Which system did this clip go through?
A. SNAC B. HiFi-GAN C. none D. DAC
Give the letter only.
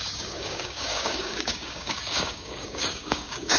D